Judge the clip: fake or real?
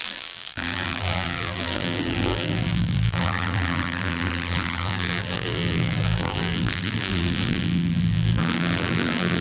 fake